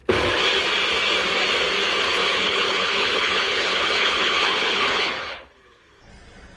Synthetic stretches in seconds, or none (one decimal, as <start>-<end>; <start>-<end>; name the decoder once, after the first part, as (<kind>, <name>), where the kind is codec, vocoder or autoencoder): 2.1-6.1 (codec, HILCodec)